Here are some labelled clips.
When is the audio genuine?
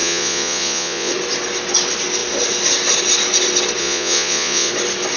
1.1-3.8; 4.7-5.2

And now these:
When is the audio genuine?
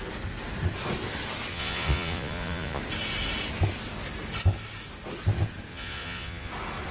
0.0-1.5; 2.8-5.7; 6.5-6.9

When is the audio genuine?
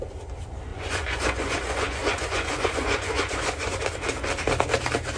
0.0-0.7; 3.8-5.2